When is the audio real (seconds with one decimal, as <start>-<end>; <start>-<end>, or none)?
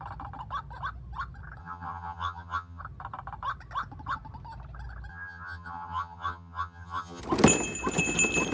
0.0-1.6; 2.8-5.1; 7.2-8.5